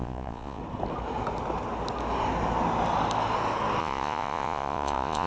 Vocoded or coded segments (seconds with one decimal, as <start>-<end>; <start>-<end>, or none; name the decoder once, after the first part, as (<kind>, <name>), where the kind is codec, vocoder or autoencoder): 0.0-0.6 (vocoder, Vocos); 3.8-5.3